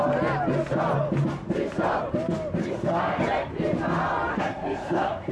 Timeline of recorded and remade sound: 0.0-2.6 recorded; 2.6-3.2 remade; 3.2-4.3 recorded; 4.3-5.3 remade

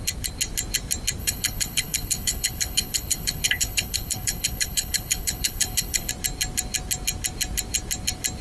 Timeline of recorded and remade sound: 0.0-1.2 recorded; 1.2-6.1 remade; 6.1-8.4 recorded

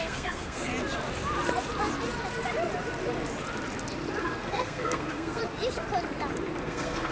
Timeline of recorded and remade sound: 0.0-0.7 remade; 0.7-4.2 recorded; 4.2-5.4 remade; 5.4-6.6 recorded; 6.6-7.1 remade

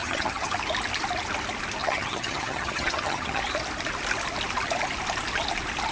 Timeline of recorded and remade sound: 0.0-0.5 remade; 0.5-1.8 recorded; 1.8-3.4 remade; 3.4-5.9 recorded

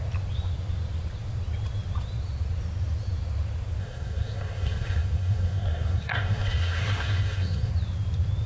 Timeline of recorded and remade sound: 0.0-3.8 recorded; 3.8-7.7 remade; 7.7-8.5 recorded

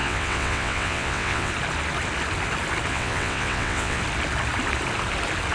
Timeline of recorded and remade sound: 0.0-1.5 remade; 1.5-2.9 recorded; 2.9-4.0 remade; 4.0-5.5 recorded

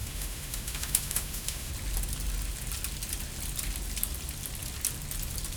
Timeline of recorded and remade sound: 0.0-1.7 remade; 1.7-5.6 recorded